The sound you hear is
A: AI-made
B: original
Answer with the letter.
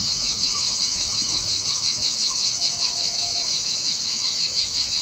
A